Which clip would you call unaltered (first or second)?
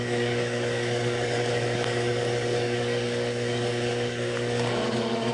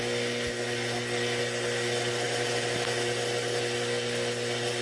second